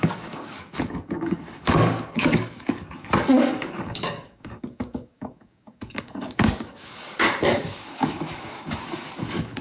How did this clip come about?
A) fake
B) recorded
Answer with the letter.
A